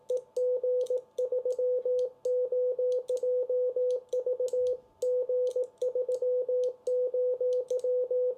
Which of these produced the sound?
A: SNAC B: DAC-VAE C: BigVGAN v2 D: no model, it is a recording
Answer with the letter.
D